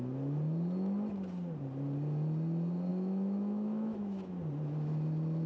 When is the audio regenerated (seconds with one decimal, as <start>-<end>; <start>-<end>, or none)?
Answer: 2.9-4.3